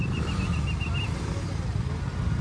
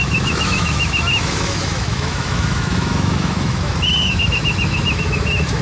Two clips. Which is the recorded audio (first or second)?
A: first